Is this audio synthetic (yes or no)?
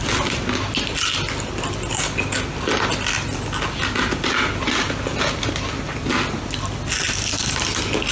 no